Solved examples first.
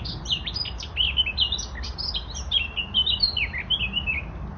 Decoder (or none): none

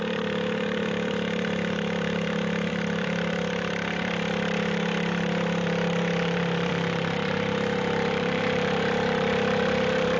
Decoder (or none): vocoder, BigVGAN v2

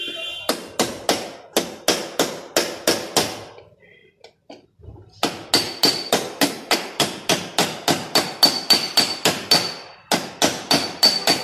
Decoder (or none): none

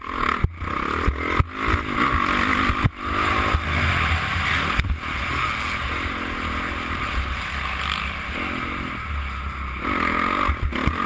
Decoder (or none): none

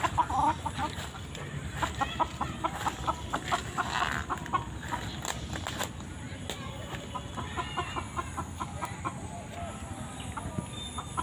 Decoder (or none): none